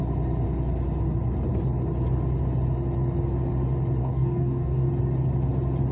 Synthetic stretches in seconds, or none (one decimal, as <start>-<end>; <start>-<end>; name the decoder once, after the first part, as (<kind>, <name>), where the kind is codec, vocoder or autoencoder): 4.0-4.9 (codec, DAC)